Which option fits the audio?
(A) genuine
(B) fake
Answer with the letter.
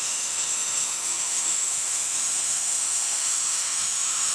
B